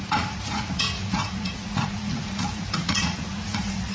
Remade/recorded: remade